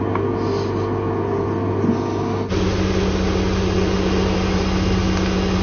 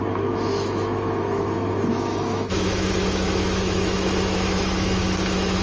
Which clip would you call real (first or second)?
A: first